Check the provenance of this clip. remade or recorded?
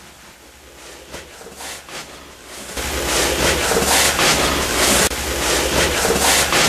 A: recorded